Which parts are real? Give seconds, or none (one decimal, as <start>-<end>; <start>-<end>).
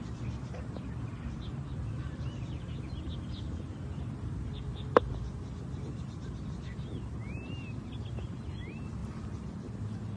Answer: 0.0-1.7; 5.1-9.0